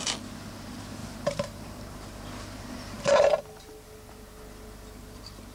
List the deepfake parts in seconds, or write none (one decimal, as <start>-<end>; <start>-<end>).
1.0-3.2